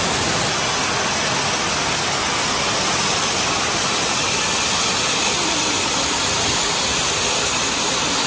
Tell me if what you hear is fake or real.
real